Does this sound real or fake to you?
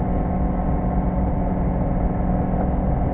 real